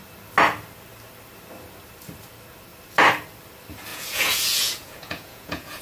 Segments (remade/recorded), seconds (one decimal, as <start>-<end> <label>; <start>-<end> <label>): 0.0-3.9 recorded; 3.9-5.8 remade